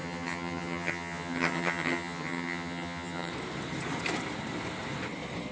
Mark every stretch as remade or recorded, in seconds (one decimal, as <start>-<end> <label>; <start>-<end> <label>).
0.0-3.3 remade; 3.3-5.5 recorded